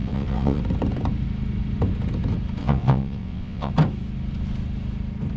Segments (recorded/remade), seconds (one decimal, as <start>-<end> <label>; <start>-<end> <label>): 0.0-0.6 remade; 0.6-2.6 recorded; 2.6-3.7 remade; 3.7-5.4 recorded